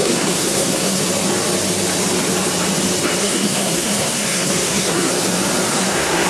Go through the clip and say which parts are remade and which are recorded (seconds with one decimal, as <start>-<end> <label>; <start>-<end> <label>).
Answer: 0.0-1.0 remade; 1.0-3.2 recorded; 3.2-5.1 remade; 5.1-5.7 recorded; 5.7-6.3 remade